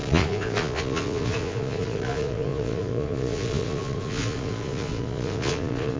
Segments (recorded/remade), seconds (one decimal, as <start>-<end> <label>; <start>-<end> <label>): 0.0-6.0 remade